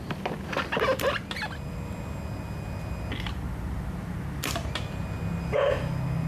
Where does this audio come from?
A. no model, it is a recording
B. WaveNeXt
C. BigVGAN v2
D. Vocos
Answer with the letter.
A